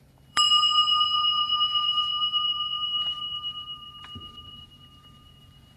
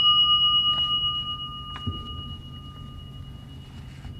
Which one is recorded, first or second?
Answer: second